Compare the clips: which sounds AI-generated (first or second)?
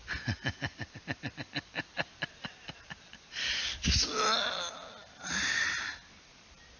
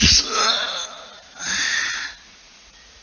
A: second